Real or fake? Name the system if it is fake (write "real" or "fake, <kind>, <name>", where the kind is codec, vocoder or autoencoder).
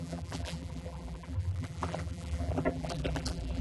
fake, vocoder, BigVGAN v2